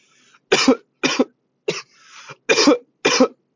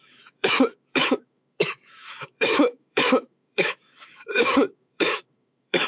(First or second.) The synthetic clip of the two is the second